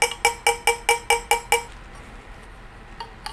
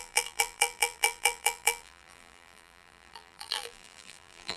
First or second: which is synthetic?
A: second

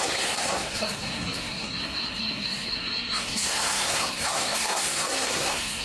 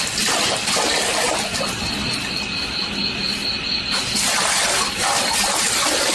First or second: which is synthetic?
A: first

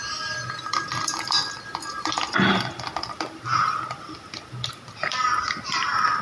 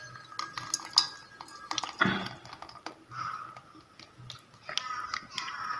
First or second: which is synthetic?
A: first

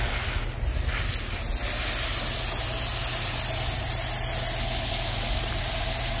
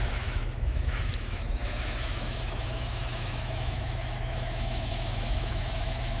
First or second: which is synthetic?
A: second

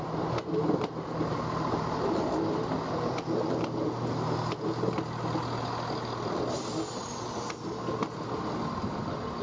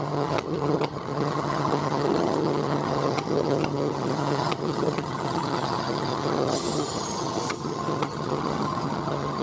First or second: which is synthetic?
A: second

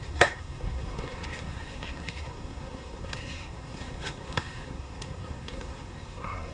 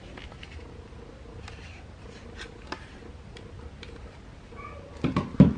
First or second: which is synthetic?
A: first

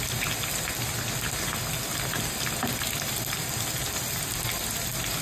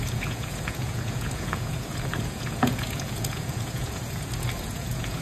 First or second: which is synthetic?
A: second